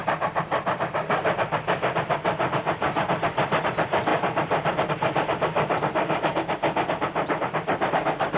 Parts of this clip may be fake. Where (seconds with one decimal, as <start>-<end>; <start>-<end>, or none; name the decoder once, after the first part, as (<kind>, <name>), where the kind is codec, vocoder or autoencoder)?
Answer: none